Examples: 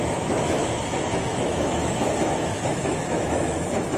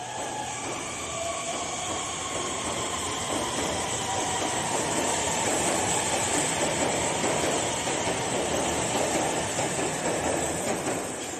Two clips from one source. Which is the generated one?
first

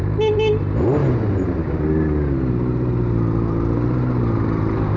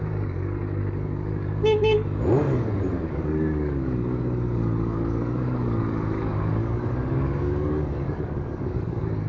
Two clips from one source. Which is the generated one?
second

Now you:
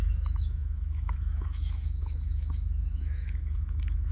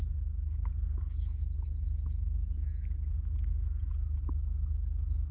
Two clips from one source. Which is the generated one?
first